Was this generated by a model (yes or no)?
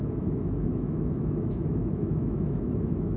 yes